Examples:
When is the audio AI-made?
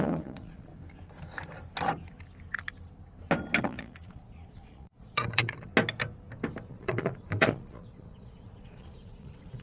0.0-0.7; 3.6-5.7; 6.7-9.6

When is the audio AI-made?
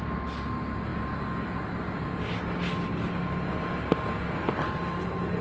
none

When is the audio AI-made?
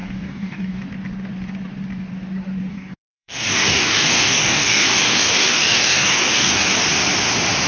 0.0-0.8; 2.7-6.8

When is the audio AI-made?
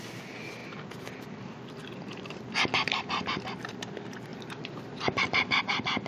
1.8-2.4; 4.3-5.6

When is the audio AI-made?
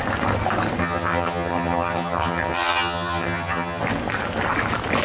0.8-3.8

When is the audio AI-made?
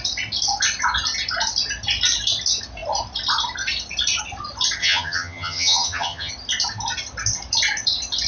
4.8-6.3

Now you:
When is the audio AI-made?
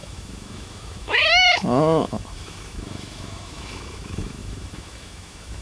0.0-5.6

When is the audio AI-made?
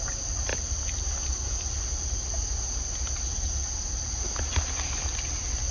none